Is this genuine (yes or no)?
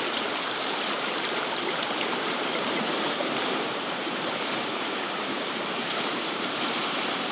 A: no